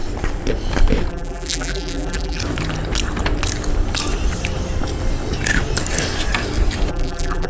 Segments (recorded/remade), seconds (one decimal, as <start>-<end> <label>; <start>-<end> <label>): 0.0-1.1 recorded; 1.1-2.4 remade; 2.4-6.9 recorded; 6.9-7.5 remade